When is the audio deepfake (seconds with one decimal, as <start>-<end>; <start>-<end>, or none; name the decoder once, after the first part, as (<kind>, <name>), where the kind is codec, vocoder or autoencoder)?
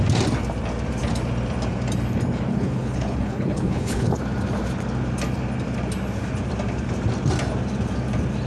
2.5-4.1 (codec, HILCodec)